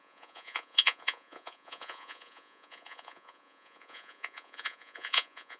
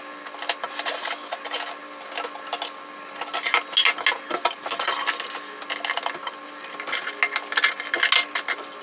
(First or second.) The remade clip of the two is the first